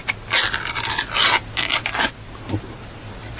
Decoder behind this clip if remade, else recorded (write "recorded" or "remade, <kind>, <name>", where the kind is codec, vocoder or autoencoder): recorded